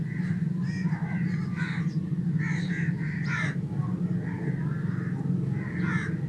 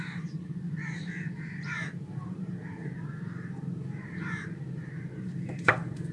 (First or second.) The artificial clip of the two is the second